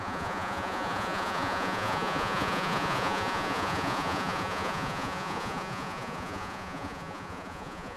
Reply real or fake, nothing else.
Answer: fake